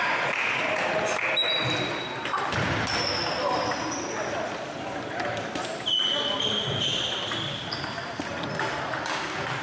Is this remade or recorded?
recorded